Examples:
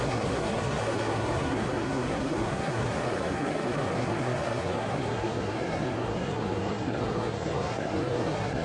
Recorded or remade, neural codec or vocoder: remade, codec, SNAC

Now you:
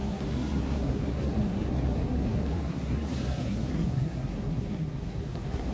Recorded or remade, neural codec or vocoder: remade, codec, SNAC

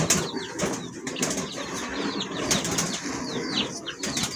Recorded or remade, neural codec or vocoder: recorded